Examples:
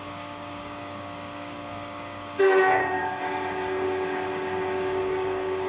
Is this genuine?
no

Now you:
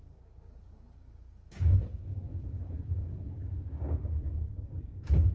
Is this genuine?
no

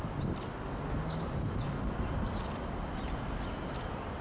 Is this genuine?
yes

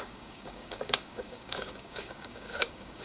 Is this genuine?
no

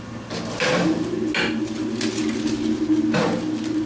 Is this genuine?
yes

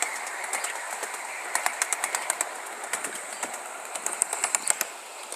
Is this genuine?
yes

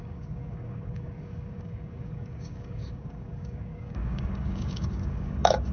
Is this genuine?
no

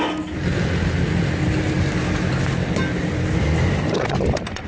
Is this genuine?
yes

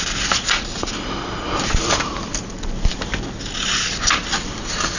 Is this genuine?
yes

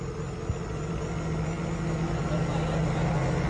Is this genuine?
yes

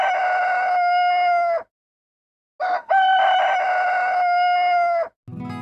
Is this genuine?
yes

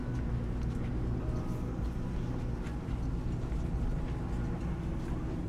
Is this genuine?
yes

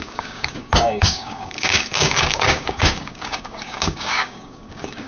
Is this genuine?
no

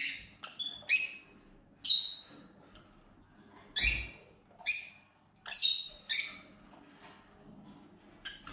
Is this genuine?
yes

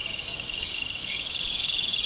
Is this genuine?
no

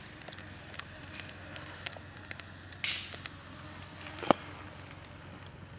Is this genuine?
yes